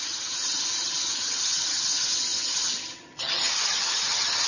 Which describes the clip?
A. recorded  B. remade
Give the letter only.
B